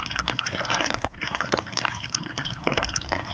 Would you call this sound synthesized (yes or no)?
yes